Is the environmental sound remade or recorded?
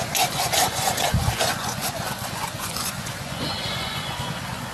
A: remade